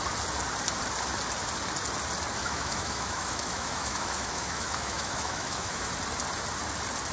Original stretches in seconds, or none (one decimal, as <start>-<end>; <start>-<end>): 0.0-2.4; 5.9-7.1